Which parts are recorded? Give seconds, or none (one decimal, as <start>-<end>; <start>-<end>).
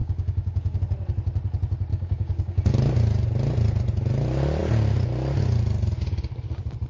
0.8-1.9; 2.7-6.9